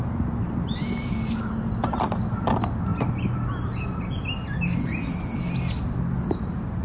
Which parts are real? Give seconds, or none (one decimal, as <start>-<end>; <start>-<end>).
0.0-6.8